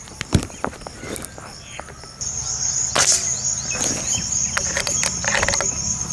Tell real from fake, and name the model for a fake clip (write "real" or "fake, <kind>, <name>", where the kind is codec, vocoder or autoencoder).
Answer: fake, vocoder, BigVGAN v2